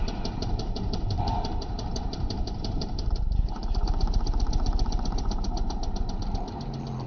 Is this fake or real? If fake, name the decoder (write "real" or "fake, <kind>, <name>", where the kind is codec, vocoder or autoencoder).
fake, vocoder, BigVGAN v2